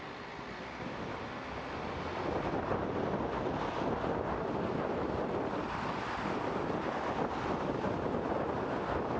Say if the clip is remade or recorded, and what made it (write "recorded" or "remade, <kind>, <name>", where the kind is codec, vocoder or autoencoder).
recorded